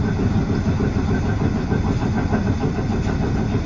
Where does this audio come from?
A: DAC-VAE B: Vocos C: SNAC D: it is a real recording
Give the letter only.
D